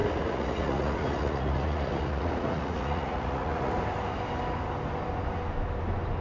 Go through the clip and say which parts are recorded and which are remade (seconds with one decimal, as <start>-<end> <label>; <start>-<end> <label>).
0.0-3.7 remade; 3.7-6.2 recorded